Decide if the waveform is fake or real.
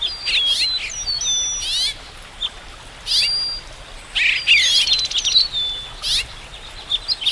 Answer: real